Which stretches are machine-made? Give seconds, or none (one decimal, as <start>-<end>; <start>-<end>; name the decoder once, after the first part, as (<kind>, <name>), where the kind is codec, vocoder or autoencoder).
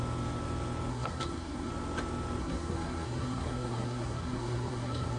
0.9-1.7 (codec, SNAC); 2.4-5.2